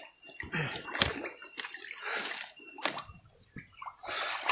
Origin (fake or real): real